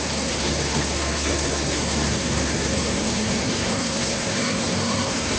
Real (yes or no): no